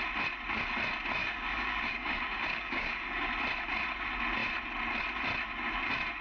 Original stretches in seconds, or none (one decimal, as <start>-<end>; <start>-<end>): 0.0-1.2; 3.3-6.2